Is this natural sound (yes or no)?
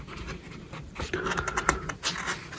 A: yes